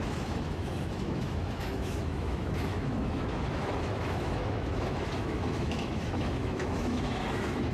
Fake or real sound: fake